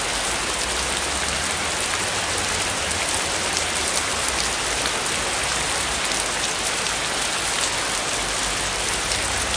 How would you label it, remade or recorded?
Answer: recorded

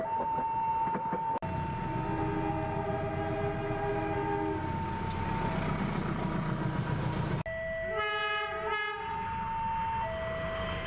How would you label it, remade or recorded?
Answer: recorded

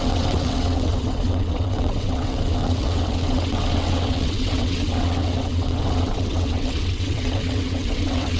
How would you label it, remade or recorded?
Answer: remade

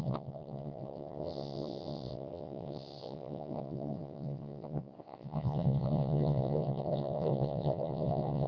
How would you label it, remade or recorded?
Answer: remade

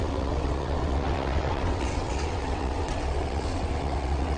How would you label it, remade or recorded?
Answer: remade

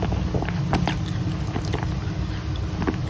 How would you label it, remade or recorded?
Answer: recorded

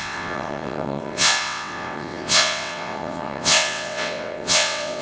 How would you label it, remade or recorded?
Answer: remade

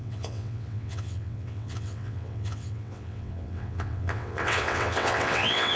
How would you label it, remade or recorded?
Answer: remade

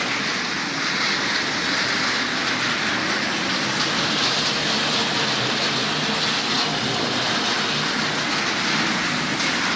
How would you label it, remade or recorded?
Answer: recorded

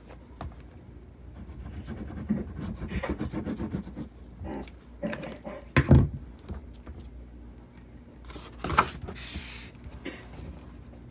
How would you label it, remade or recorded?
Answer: recorded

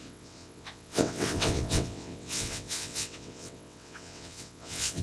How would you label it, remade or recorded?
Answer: remade